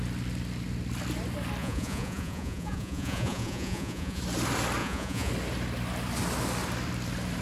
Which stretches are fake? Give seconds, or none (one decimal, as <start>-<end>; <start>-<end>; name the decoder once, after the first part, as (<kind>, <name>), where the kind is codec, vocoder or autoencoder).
1.6-4.2 (vocoder, Vocos); 4.8-5.3